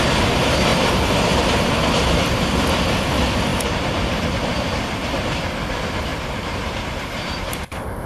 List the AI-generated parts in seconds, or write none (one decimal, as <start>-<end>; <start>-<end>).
0.7-1.8; 3.5-4.2; 6.1-8.1